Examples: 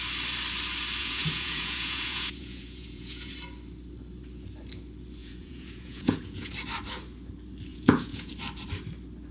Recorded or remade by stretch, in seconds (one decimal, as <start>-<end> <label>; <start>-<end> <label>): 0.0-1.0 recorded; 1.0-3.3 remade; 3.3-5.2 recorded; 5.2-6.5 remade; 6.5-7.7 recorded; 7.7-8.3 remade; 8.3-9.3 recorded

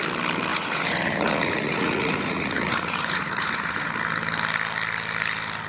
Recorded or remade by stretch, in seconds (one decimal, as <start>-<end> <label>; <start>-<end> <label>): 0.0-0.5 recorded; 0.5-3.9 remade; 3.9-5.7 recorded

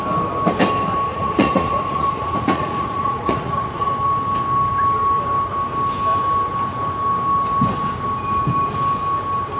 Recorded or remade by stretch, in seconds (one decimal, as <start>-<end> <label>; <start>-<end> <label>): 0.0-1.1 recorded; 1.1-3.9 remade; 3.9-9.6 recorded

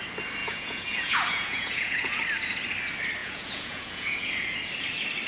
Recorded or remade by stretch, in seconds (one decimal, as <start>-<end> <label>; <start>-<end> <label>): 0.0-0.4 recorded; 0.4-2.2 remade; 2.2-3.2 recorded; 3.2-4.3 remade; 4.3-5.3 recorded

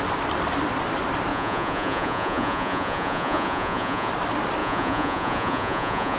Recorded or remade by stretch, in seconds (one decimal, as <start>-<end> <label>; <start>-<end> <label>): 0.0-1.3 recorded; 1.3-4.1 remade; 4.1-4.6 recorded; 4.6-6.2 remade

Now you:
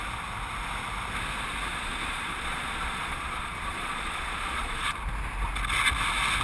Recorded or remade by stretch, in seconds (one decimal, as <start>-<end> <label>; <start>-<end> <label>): 0.0-1.7 recorded; 1.7-4.9 remade; 4.9-6.4 recorded